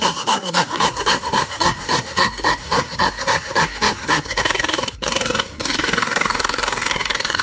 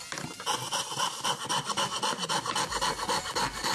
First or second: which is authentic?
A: second